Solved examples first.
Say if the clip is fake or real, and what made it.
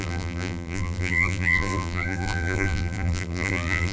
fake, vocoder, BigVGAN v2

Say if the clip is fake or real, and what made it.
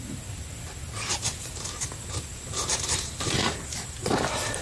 fake, vocoder, BigVGAN v2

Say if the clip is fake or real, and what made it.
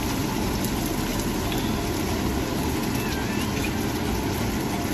real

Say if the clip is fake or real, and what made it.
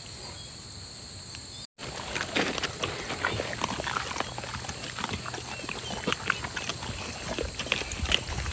real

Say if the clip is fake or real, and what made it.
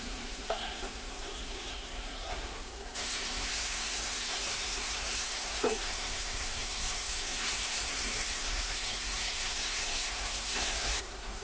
fake, codec, SNAC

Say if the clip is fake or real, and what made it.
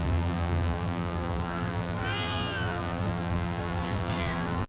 fake, vocoder, BigVGAN v2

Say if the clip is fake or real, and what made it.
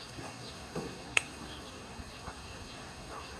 fake, codec, SNAC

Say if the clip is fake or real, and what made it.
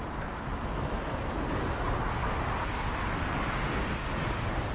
real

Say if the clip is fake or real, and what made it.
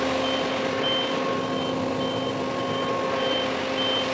real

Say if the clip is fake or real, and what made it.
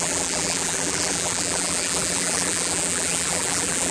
fake, vocoder, BigVGAN v2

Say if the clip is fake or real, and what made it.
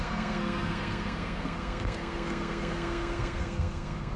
fake, codec, SNAC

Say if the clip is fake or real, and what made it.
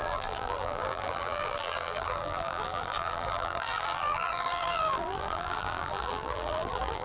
fake, vocoder, BigVGAN v2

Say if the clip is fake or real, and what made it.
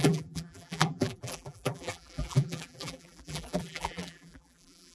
fake, vocoder, BigVGAN v2